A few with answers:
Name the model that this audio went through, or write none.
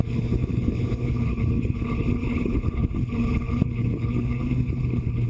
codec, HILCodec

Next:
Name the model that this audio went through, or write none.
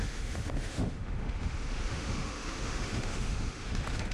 autoencoder, DAC-VAE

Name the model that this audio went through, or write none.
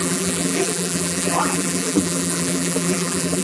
vocoder, BigVGAN v2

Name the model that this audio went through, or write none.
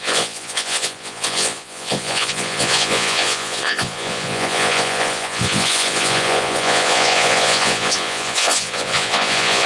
vocoder, Vocos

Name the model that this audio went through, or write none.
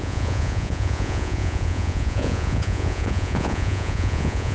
vocoder, Vocos